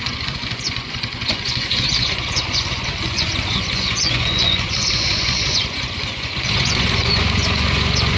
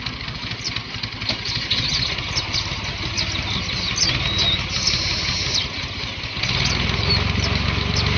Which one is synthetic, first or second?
first